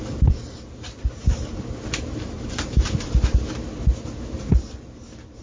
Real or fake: real